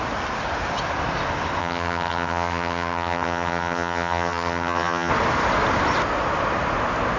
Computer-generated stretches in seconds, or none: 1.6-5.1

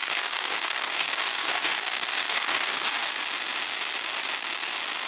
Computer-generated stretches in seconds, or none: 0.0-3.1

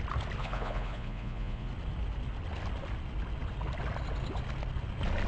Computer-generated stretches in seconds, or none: 0.4-1.7

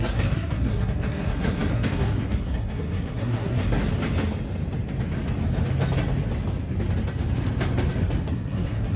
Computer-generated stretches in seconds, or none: 0.0-3.8; 8.3-9.0

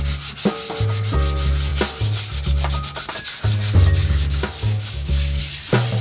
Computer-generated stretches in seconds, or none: 4.0-5.4

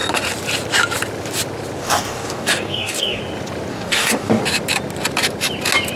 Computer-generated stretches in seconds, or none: 1.8-3.2; 3.7-4.4